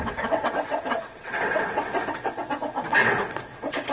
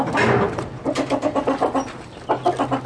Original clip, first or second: second